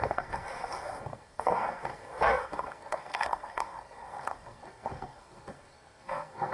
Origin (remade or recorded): remade